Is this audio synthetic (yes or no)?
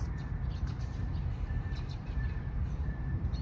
yes